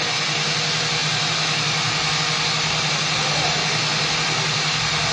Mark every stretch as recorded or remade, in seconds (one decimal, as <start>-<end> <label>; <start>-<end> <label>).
0.0-5.1 recorded